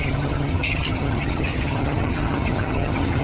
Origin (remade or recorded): remade